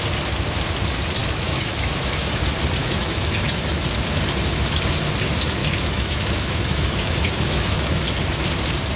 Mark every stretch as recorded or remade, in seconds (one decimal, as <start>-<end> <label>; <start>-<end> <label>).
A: 0.0-1.2 recorded; 1.2-2.4 remade; 2.4-2.8 recorded; 2.8-3.8 remade; 3.8-5.6 recorded; 5.6-8.0 remade; 8.0-9.0 recorded

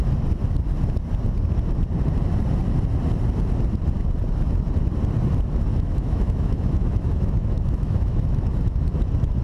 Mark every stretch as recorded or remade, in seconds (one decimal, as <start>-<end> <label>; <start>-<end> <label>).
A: 0.0-5.7 recorded; 5.7-8.8 remade; 8.8-9.4 recorded

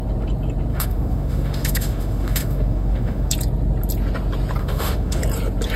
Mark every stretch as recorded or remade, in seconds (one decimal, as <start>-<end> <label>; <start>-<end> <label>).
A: 0.0-0.7 recorded; 0.7-3.3 remade; 3.3-4.6 recorded; 4.6-5.2 remade; 5.2-5.8 recorded

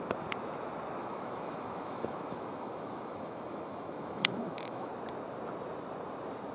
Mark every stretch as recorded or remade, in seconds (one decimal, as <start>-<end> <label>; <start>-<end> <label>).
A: 0.0-1.0 recorded; 1.0-4.9 remade; 4.9-6.5 recorded

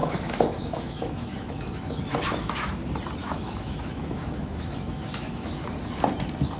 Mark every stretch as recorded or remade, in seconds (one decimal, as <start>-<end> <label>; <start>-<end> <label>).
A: 0.0-2.7 remade; 2.7-3.2 recorded; 3.2-5.5 remade; 5.5-6.6 recorded

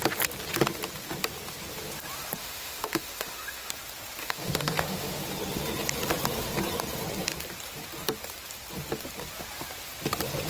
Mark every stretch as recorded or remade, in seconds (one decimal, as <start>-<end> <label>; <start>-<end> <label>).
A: 0.0-2.4 recorded; 2.4-3.7 remade; 3.7-4.2 recorded; 4.2-5.2 remade; 5.2-10.5 recorded

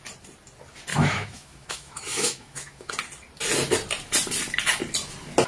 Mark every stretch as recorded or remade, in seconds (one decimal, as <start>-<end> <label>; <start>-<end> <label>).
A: 0.0-0.9 recorded; 0.9-2.9 remade; 2.9-5.5 recorded

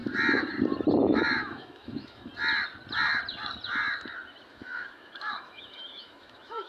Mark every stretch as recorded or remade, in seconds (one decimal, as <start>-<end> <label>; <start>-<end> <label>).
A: 0.0-1.0 recorded; 1.0-2.3 remade; 2.3-4.5 recorded; 4.5-6.7 remade